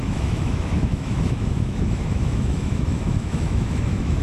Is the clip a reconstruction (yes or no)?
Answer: yes